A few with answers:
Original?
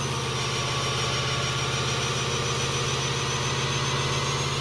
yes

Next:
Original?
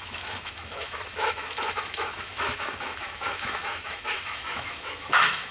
no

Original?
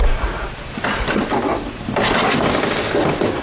yes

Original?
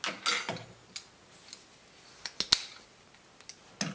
yes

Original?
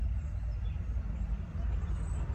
yes